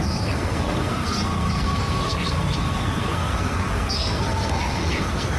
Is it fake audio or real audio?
fake